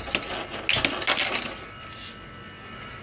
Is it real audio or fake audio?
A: real